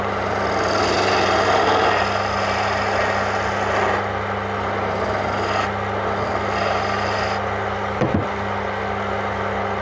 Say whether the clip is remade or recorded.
recorded